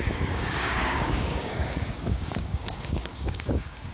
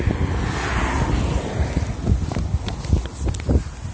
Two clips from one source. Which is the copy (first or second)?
first